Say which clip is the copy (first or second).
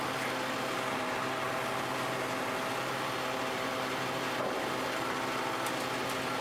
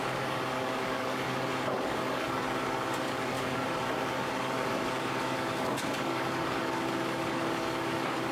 second